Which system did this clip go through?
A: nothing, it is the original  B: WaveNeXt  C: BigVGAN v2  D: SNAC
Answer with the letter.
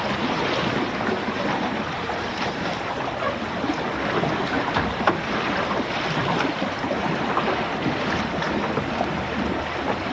A